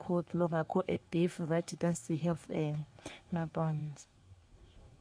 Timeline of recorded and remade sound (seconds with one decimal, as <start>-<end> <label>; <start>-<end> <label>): 0.0-5.0 remade